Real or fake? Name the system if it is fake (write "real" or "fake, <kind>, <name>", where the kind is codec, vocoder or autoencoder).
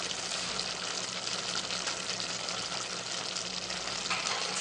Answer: real